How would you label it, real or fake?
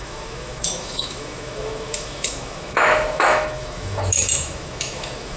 fake